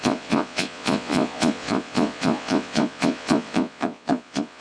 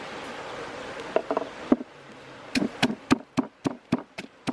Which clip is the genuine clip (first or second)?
second